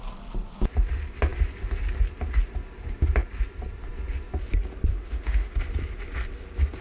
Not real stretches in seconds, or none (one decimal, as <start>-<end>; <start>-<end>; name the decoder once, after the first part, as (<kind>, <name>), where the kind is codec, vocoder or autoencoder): 4.9-5.6 (autoencoder, DAC-VAE)